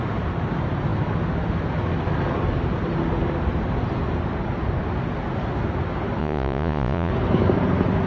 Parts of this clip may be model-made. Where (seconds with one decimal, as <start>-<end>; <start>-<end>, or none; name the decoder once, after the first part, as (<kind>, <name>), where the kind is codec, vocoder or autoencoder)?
6.2-7.1 (vocoder, Vocos)

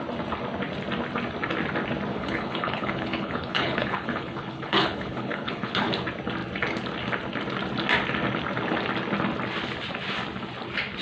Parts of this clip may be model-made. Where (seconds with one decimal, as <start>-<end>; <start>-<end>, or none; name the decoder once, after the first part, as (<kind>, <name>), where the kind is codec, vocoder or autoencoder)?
2.1-5.9 (codec, HILCodec)

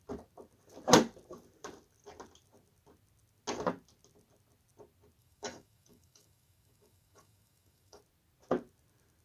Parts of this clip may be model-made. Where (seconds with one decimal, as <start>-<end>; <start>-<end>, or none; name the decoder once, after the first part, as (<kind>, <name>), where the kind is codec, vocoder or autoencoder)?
5.2-8.0 (codec, DAC)

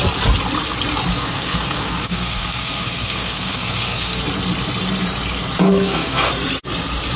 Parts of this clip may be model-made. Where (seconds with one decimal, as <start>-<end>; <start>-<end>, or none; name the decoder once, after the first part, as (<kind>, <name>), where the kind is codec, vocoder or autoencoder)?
1.1-4.2 (codec, SNAC); 5.7-6.3

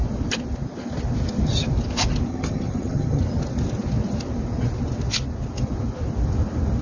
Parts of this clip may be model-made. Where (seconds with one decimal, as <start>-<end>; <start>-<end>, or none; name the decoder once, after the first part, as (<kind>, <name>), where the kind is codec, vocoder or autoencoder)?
2.3-3.2 (vocoder, HiFi-GAN)

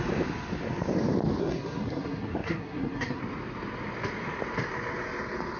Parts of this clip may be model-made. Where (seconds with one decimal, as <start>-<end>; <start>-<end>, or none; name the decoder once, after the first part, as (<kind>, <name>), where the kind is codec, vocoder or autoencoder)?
1.4-3.2 (codec, SNAC)